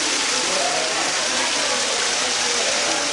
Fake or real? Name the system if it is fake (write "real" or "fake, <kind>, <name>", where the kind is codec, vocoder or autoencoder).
fake, vocoder, BigVGAN v2